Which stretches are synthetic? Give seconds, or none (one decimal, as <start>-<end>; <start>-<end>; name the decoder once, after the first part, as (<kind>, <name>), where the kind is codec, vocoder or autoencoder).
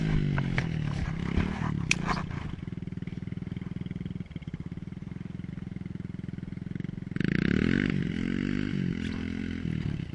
5.0-5.5 (vocoder, BigVGAN v2)